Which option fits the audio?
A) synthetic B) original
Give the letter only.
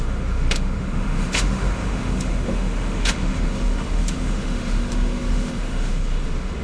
A